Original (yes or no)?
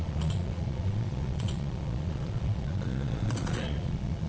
no